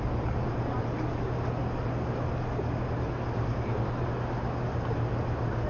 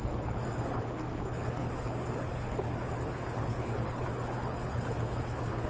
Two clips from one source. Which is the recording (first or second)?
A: first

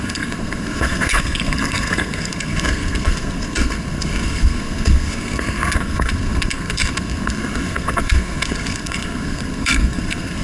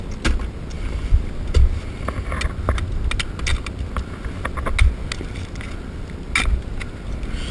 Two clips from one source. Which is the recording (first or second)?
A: second